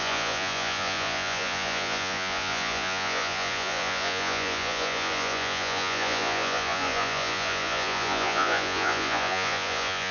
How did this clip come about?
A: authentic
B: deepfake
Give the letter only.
B